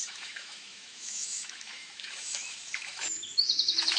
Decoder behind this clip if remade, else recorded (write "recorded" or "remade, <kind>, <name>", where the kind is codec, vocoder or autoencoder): remade, autoencoder, DAC-VAE